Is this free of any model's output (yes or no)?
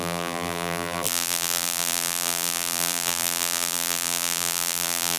no